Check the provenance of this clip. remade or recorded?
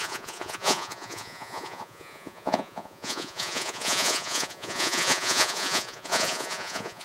remade